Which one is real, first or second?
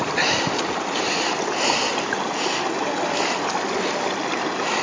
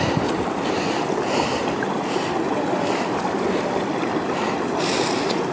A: first